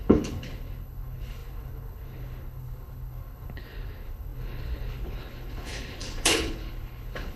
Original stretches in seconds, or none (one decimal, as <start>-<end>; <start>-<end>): none